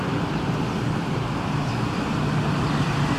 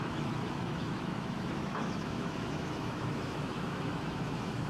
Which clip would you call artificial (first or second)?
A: second